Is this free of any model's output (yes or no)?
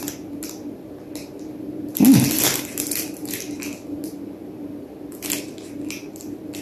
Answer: yes